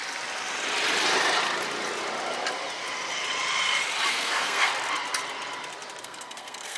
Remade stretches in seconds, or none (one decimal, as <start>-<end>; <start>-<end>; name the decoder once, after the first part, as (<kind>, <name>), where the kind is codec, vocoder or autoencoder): 4.1-4.7 (codec, SNAC); 6.0-6.8